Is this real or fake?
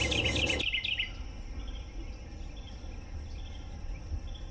real